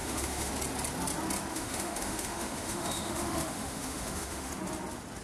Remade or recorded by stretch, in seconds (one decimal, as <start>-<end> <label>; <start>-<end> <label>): 0.0-0.5 remade; 0.5-1.5 recorded; 1.5-4.5 remade; 4.5-5.2 recorded